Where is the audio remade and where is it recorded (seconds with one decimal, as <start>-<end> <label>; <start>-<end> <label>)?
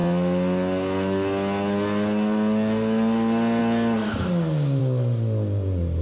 0.0-6.0 recorded